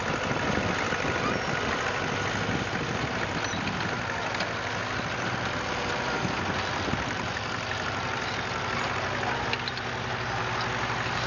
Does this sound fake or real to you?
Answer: real